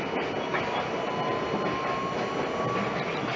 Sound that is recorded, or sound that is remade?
recorded